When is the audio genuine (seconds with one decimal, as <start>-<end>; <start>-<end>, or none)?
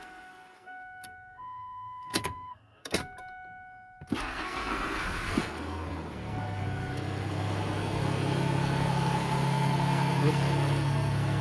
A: 3.0-4.2